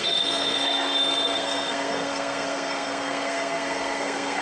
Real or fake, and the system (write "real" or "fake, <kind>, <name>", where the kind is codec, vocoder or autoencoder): fake, codec, SNAC